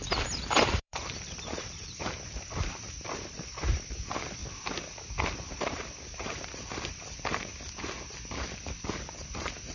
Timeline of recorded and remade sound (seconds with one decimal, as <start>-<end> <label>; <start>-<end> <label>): 0.0-4.4 remade; 4.4-5.5 recorded; 5.5-7.5 remade; 7.5-9.0 recorded; 9.0-9.7 remade